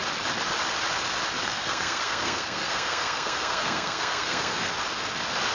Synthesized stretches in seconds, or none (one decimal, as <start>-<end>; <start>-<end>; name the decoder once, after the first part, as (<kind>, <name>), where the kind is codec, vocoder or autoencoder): 1.4-4.7 (codec, SNAC)